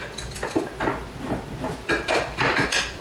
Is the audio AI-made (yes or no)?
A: no